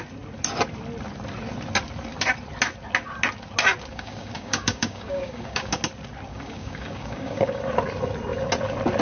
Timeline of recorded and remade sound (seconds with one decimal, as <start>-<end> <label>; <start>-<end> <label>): 0.0-3.9 recorded; 3.9-5.8 remade; 5.8-6.3 recorded; 6.3-7.6 remade; 7.6-9.0 recorded